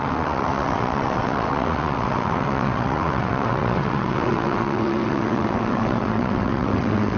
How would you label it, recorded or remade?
remade